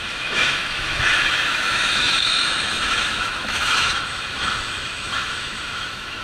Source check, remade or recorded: remade